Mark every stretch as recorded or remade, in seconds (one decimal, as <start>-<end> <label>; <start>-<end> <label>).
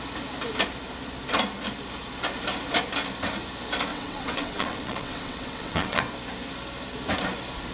0.0-3.9 recorded; 3.9-6.0 remade; 6.0-7.7 recorded